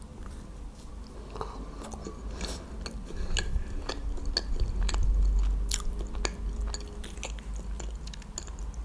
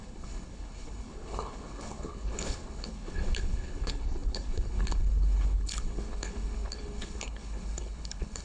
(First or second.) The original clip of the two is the first